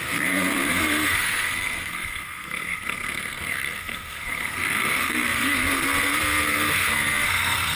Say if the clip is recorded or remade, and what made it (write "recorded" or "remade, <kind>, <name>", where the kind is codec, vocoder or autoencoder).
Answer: remade, codec, SNAC